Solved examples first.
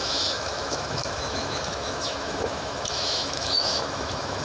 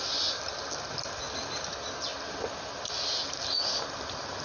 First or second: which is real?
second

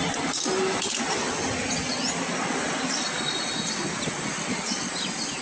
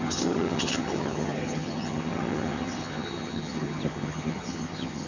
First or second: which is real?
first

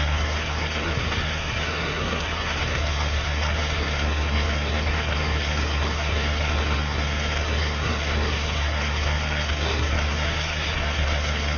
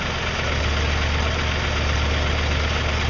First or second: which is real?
second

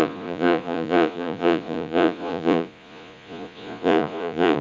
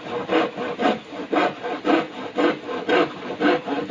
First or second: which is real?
second